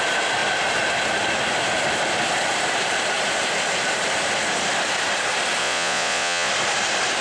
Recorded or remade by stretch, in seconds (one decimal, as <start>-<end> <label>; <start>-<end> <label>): 0.0-5.6 recorded; 5.6-6.5 remade; 6.5-7.2 recorded